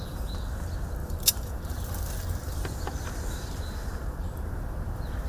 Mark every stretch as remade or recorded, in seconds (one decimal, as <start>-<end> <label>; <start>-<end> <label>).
0.0-1.0 recorded; 1.0-1.7 remade; 1.7-5.3 recorded